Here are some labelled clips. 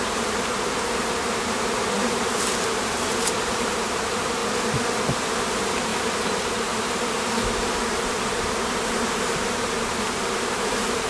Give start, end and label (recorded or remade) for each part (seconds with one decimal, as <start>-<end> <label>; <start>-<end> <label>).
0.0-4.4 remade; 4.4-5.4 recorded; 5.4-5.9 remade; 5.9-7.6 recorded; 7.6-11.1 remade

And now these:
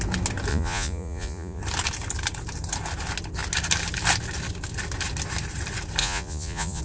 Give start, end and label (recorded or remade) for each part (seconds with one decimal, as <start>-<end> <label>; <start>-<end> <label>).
0.0-0.5 recorded; 0.5-1.6 remade; 1.6-6.0 recorded; 6.0-6.8 remade

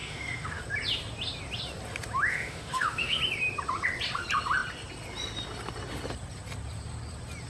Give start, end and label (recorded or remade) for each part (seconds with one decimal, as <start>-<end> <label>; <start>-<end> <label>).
0.0-0.6 remade; 0.6-2.3 recorded; 2.3-3.2 remade; 3.2-7.5 recorded

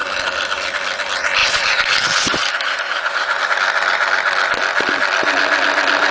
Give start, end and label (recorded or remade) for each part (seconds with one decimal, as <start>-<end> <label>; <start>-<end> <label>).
0.0-1.4 recorded; 1.4-3.4 remade; 3.4-6.1 recorded

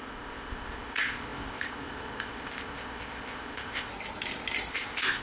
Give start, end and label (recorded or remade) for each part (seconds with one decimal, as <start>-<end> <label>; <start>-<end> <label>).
0.0-3.9 remade; 3.9-4.7 recorded; 4.7-5.2 remade

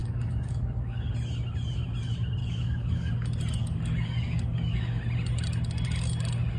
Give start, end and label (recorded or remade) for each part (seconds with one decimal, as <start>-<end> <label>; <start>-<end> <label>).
0.0-1.1 remade; 1.1-2.4 recorded; 2.4-3.1 remade; 3.1-3.6 recorded; 3.6-5.0 remade; 5.0-6.6 recorded

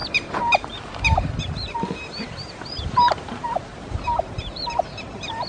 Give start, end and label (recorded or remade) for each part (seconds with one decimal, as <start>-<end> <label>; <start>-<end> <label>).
0.0-3.7 remade; 3.7-4.4 recorded; 4.4-5.5 remade

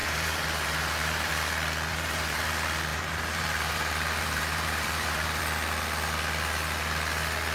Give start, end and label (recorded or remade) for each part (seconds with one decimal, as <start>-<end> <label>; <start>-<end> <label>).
0.0-1.3 remade; 1.3-1.9 recorded; 1.9-2.5 remade; 2.5-2.9 recorded; 2.9-5.4 remade; 5.4-7.5 recorded